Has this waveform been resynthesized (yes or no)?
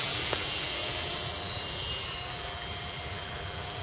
yes